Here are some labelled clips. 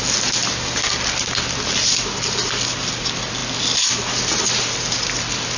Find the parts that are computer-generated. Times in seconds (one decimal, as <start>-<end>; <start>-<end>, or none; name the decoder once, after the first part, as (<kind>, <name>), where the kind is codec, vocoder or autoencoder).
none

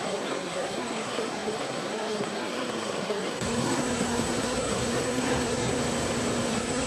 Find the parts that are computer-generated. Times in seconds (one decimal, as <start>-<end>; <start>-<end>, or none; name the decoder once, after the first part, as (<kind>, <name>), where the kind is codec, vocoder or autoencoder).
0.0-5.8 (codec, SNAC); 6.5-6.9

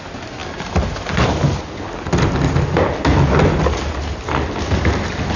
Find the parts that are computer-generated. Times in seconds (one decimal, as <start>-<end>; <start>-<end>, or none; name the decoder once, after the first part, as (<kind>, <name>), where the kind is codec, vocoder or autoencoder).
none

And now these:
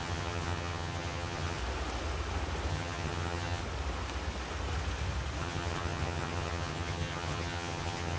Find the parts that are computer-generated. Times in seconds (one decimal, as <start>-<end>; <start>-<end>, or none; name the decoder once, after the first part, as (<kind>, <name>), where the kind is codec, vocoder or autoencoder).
0.0-1.6 (vocoder, HiFi-GAN); 2.7-3.6; 5.4-8.2

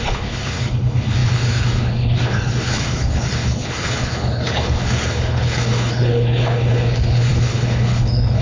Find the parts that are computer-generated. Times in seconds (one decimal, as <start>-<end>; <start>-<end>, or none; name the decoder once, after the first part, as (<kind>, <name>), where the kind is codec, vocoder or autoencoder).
0.0-8.4 (codec, HILCodec)

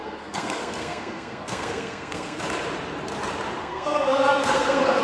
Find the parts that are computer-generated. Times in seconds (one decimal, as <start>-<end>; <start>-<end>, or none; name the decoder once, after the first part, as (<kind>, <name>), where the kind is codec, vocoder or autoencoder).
0.0-2.4 (codec, SNAC); 3.6-5.0